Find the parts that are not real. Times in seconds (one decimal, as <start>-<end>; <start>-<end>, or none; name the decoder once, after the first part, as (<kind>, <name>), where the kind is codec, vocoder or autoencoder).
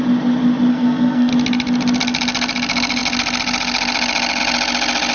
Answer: 0.7-1.3 (codec, SNAC)